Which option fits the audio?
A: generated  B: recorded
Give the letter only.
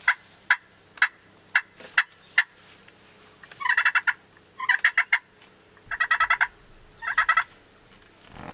B